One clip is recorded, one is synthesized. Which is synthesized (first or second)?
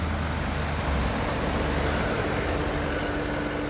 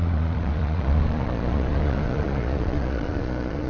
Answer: second